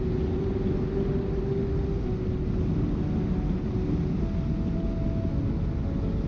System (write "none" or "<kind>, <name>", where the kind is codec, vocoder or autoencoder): none